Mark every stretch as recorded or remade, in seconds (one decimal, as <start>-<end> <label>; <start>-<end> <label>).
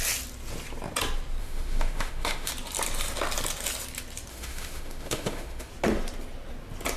0.0-1.4 recorded; 1.4-2.5 remade; 2.5-4.3 recorded; 4.3-5.7 remade; 5.7-7.0 recorded